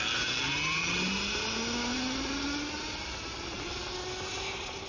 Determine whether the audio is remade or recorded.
recorded